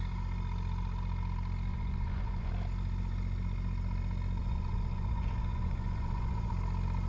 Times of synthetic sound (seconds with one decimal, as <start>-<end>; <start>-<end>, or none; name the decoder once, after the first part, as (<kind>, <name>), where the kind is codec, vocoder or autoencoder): 1.7-2.5 (vocoder, Vocos); 4.4-6.5